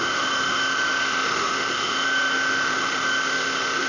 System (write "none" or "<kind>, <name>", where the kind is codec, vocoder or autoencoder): autoencoder, DAC-VAE